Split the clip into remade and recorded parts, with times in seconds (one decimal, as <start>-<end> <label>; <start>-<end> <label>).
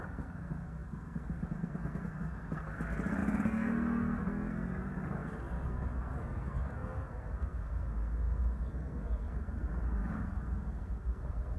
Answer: 0.0-11.6 remade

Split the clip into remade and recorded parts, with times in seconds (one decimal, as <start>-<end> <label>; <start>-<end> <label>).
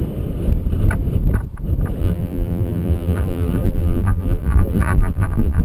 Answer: 0.0-2.0 recorded; 2.0-5.6 remade